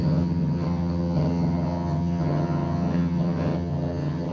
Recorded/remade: remade